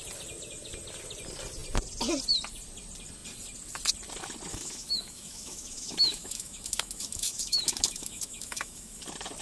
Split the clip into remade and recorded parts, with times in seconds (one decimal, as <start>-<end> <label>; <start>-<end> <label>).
0.0-4.5 recorded; 4.5-9.0 remade; 9.0-9.4 recorded